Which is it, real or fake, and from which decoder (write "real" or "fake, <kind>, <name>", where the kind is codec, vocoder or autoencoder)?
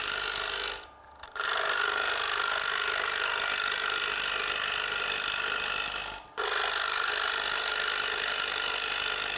real